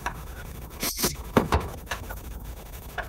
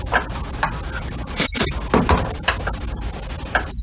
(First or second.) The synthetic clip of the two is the first